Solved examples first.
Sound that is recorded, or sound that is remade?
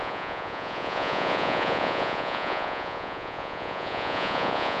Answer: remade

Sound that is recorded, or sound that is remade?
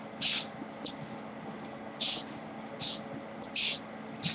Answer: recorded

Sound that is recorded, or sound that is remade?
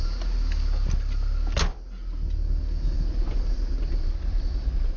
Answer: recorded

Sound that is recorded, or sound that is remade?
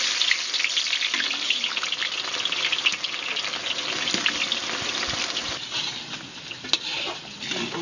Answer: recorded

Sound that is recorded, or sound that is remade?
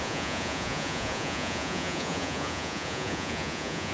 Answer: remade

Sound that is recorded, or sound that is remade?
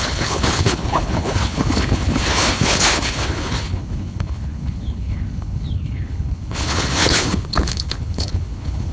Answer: remade